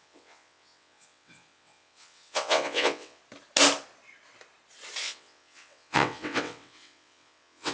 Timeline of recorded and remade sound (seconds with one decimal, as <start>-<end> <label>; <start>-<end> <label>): 0.0-3.2 remade; 3.2-5.0 recorded; 5.0-7.7 remade